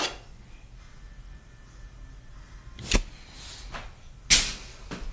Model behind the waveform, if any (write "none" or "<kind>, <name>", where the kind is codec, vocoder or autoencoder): none